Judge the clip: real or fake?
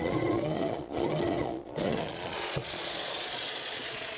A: fake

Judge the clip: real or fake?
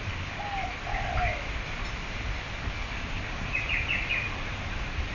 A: real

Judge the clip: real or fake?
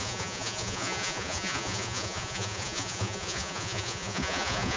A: fake